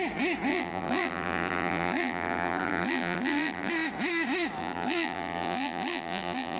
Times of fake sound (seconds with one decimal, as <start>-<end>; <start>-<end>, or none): 0.5-3.7; 4.6-6.6